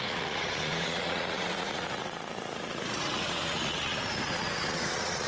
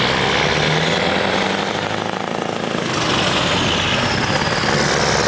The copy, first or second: first